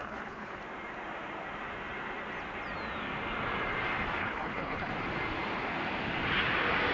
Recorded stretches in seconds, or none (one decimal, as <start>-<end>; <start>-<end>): 0.6-4.2; 4.9-6.9